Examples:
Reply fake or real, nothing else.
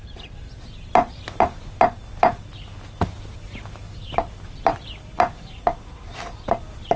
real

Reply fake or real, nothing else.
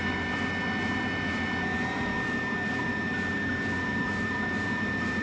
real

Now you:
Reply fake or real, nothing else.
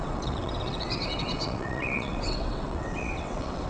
fake